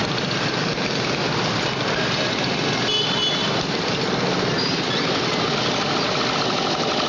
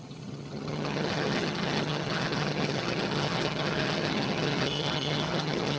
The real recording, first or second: first